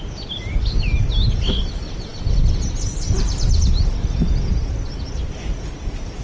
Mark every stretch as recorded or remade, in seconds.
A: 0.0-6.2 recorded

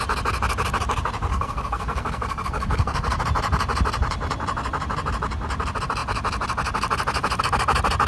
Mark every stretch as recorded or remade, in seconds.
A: 0.0-1.3 recorded; 1.3-3.2 remade; 3.2-8.1 recorded

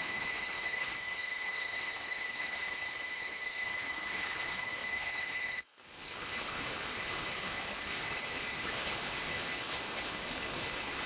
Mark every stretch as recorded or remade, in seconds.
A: 0.0-11.1 remade

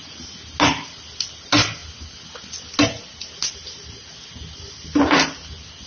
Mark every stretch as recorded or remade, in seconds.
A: 0.0-5.9 recorded